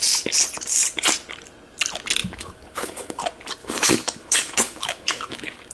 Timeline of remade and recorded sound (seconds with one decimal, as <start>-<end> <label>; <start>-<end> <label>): 0.0-2.2 recorded; 2.2-3.2 remade; 3.2-3.6 recorded; 3.6-5.7 remade